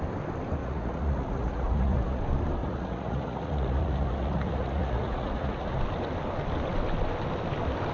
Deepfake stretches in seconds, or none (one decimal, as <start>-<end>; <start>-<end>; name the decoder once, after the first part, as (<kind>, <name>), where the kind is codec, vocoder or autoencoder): 0.6-2.2 (vocoder, Vocos); 2.6-5.8